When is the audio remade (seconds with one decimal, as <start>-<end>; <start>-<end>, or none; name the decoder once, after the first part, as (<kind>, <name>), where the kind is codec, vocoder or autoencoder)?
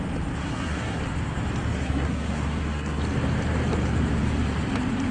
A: 0.4-1.0 (codec, SNAC); 1.7-3.0